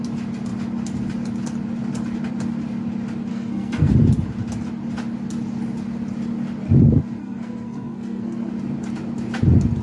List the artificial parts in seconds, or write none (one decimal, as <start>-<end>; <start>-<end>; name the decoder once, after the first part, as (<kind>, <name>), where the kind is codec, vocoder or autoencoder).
3.3-3.9 (codec, SNAC); 7.2-8.5